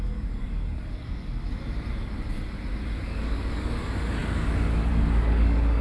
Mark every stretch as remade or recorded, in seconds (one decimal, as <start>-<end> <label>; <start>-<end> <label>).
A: 0.0-1.4 remade; 1.4-3.0 recorded; 3.0-5.8 remade